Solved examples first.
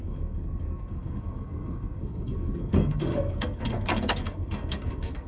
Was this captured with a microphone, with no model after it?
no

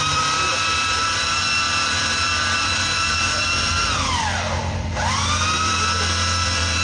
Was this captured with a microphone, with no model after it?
no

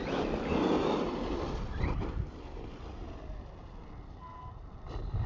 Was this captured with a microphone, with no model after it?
yes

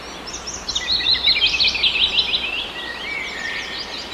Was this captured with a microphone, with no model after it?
yes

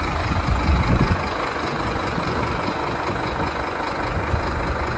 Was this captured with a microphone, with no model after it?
no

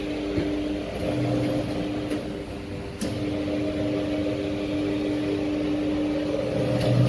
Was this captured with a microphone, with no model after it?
yes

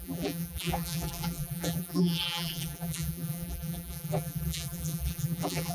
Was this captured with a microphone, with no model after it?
no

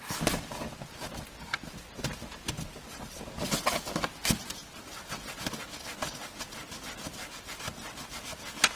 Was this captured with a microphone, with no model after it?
yes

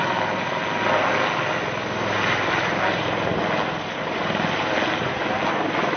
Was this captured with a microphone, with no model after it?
yes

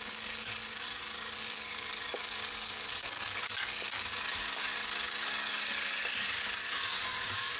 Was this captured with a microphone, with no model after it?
no